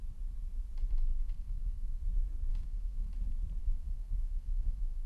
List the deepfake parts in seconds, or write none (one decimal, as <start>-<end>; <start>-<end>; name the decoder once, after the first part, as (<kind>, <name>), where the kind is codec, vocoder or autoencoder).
1.1-2.0 (codec, SNAC); 2.5-3.1; 3.6-5.1